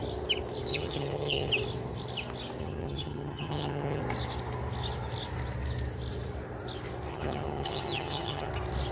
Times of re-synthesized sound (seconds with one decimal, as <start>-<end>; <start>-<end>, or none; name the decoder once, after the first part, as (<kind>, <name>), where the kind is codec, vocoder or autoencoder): 0.7-1.5 (vocoder, HiFi-GAN); 2.6-4.0; 7.1-8.5